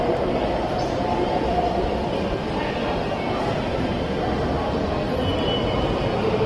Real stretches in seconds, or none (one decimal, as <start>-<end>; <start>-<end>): 0.0-3.7; 4.2-6.5

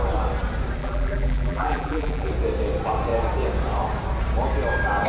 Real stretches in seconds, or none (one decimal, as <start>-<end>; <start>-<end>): 0.0-0.8; 2.3-5.1

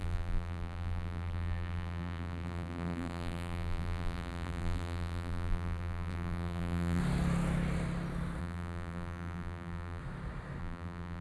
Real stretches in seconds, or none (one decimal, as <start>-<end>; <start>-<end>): 7.0-8.4; 10.0-10.6

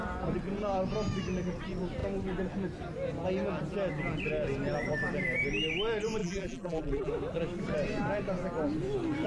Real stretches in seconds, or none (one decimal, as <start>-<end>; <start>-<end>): 0.0-6.2; 7.1-9.3

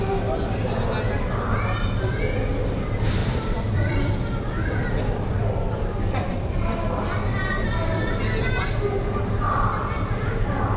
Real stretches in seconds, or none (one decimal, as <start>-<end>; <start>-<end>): 0.0-3.2; 4.9-10.8

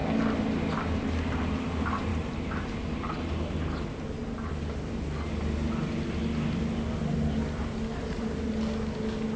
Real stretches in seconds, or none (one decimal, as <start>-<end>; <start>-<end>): 0.0-2.1; 2.7-8.0; 8.5-9.4